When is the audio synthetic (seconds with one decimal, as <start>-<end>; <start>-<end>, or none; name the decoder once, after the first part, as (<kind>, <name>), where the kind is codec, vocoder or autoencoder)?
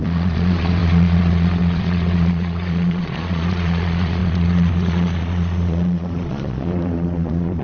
0.0-7.6 (vocoder, Vocos)